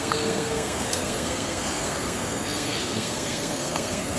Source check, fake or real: fake